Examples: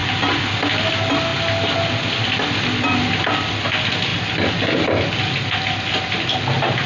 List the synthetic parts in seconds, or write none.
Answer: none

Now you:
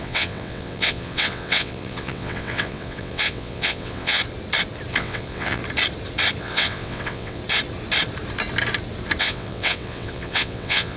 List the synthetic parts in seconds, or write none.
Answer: 0.0-4.2 (vocoder, WaveNeXt); 4.9-5.6; 6.4-7.4; 9.2-11.0

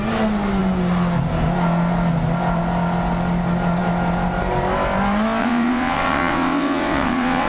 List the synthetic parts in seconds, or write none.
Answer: 5.4-7.5 (vocoder, WaveNeXt)

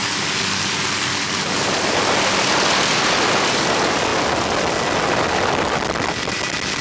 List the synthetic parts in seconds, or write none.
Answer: none

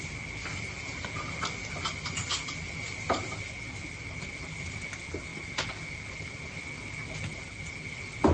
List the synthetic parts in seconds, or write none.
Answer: none

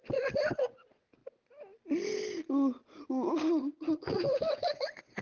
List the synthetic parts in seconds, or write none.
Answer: 0.0-1.2 (vocoder, WaveNeXt); 3.3-5.2

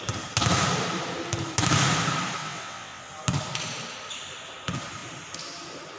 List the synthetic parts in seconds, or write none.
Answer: 2.4-3.1 (vocoder, WaveNeXt)